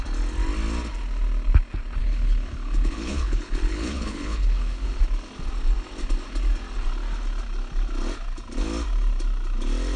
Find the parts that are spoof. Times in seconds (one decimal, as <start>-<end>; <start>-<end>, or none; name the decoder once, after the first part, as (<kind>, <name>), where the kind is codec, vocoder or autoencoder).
2.0-5.0 (codec, HILCodec)